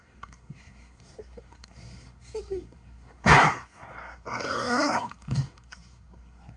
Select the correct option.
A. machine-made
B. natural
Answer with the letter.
A